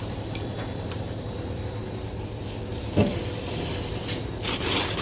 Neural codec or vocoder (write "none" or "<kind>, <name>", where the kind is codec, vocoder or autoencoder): vocoder, BigVGAN v2